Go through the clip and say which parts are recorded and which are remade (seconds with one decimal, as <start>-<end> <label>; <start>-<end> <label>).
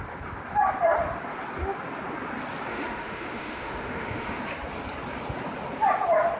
0.0-2.7 recorded; 2.7-4.4 remade; 4.4-6.4 recorded